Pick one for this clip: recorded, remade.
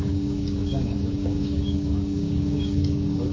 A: remade